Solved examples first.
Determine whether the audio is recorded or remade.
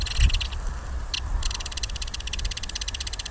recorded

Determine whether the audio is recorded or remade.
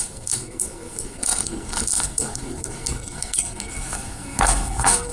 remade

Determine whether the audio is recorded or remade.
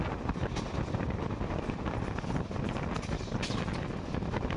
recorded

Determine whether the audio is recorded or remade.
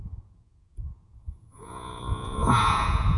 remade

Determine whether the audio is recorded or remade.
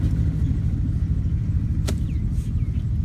recorded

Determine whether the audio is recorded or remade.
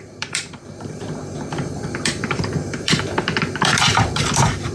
remade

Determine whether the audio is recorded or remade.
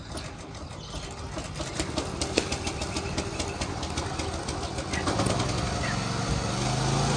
recorded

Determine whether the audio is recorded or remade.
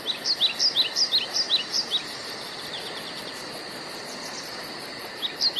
recorded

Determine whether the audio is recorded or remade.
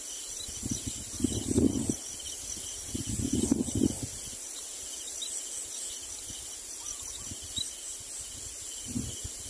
recorded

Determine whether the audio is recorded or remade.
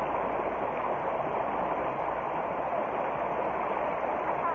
recorded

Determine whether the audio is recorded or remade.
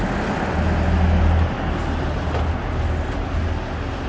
recorded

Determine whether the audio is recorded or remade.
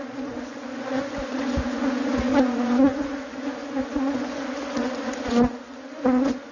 remade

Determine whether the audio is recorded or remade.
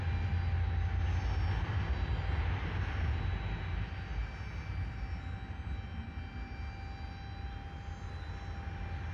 recorded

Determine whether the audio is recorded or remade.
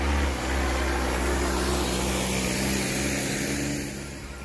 recorded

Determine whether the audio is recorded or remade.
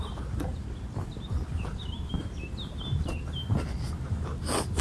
recorded